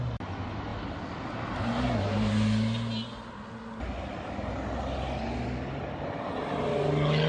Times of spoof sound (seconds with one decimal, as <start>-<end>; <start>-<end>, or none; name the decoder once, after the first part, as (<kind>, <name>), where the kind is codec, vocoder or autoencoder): none